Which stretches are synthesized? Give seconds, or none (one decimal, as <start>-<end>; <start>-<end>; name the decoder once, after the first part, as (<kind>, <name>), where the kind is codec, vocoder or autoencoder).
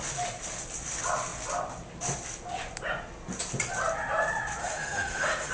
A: 4.6-5.5 (autoencoder, DAC-VAE)